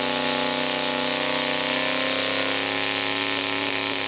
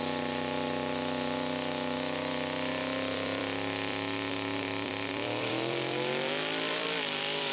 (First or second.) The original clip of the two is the first